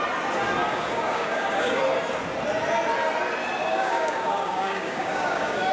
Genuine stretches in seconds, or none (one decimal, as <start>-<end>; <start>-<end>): 0.0-0.6; 1.8-3.6